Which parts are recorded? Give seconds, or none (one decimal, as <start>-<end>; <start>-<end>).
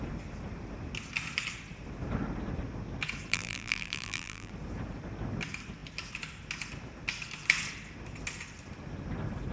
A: 0.0-3.3; 4.5-9.5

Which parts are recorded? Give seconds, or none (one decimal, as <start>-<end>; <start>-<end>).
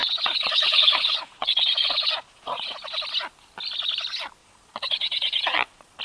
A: 3.0-4.4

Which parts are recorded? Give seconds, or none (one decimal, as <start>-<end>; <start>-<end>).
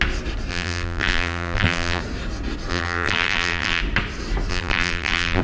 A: 0.0-0.5; 2.0-2.7; 3.8-4.5